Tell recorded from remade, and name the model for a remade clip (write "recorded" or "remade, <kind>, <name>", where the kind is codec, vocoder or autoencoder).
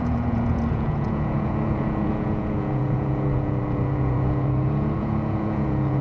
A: remade, vocoder, Vocos